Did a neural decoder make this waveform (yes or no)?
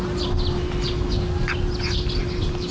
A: no